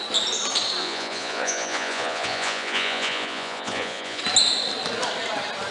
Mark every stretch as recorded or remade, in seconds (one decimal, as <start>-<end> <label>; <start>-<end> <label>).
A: 0.0-0.8 recorded; 0.8-4.2 remade; 4.2-5.7 recorded